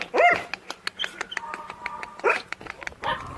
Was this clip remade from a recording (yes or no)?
no